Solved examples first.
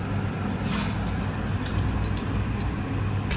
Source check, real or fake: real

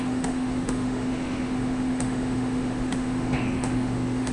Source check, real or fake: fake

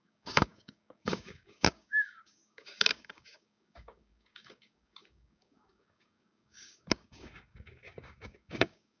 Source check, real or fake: fake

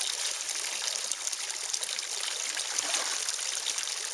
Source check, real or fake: real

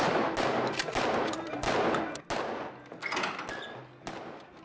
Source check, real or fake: real